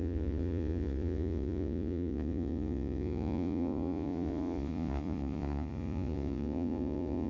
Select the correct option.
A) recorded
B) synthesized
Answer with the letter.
B